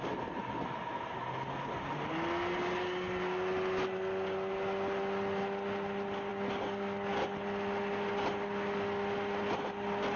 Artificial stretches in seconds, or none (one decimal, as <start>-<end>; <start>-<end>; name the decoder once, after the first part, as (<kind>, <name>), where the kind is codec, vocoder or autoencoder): none